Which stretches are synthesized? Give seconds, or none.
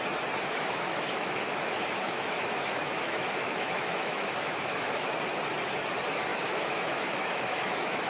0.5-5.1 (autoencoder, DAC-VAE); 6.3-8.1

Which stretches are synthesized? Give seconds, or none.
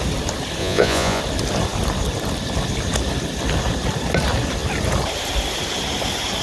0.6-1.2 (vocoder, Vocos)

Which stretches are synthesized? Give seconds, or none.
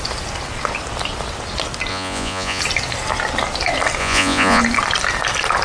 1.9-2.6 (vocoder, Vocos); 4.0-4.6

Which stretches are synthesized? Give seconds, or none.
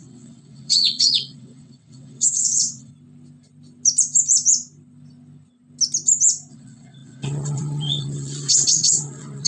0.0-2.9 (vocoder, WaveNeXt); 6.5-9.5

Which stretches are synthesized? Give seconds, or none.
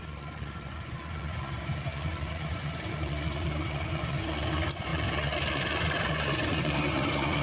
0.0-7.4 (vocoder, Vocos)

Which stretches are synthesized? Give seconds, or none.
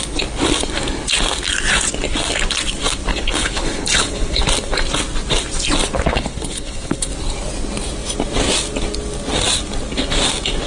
3.1-4.4 (codec, HILCodec); 6.1-7.1